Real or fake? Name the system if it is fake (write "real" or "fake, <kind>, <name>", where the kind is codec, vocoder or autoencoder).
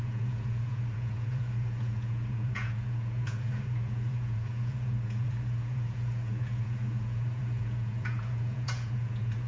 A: fake, vocoder, Vocos